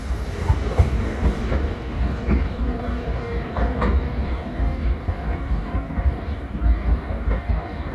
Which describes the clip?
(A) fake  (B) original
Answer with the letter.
A